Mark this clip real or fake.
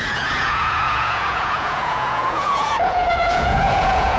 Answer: fake